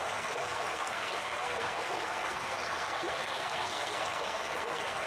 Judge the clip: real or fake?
fake